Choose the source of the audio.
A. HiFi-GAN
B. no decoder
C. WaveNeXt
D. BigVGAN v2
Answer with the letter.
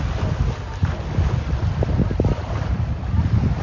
B